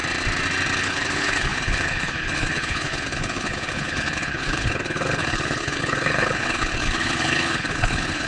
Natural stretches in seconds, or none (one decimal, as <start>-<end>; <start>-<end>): 0.0-0.8